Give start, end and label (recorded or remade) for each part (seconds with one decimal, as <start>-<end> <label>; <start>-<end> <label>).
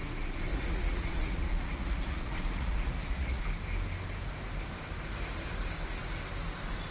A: 0.0-0.5 recorded; 0.5-3.4 remade; 3.4-6.9 recorded